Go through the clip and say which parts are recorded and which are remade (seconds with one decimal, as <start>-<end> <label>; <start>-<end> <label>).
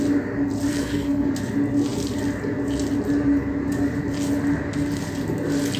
0.0-0.7 recorded; 0.7-1.3 remade; 1.3-5.8 recorded